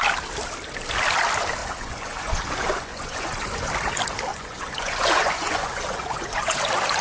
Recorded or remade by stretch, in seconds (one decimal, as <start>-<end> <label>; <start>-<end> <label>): 0.0-1.6 recorded; 1.6-3.7 remade; 3.7-4.3 recorded; 4.3-6.6 remade; 6.6-7.0 recorded

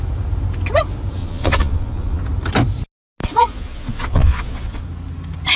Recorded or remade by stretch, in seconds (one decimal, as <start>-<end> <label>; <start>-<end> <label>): 0.0-1.2 recorded; 1.2-2.2 remade; 2.2-3.2 recorded; 3.2-4.8 remade; 4.8-5.6 recorded

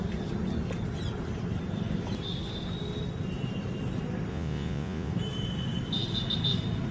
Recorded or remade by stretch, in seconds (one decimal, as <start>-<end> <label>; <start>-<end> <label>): 0.0-4.3 recorded; 4.3-5.1 remade; 5.1-6.9 recorded

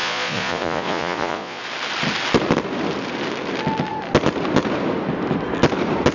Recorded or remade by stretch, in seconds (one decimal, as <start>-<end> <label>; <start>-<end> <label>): 0.0-1.6 remade; 1.6-6.1 recorded

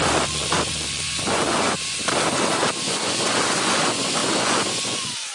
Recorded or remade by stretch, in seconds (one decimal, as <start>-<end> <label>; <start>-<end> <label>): 0.0-2.0 remade; 2.0-2.8 recorded; 2.8-5.3 remade

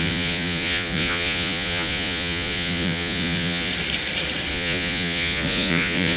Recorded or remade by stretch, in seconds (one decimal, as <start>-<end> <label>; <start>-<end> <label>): 0.0-3.7 remade; 3.7-4.5 recorded; 4.5-6.2 remade